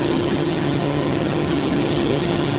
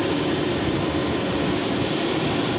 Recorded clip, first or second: second